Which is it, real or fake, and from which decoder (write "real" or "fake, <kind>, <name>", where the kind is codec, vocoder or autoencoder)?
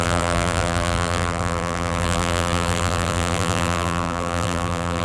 fake, vocoder, BigVGAN v2